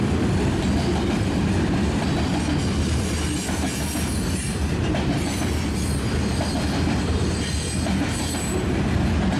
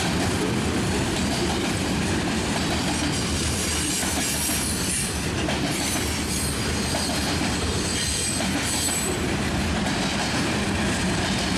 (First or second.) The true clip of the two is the first